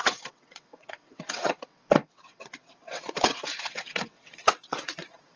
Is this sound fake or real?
fake